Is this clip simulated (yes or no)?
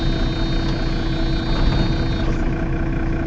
no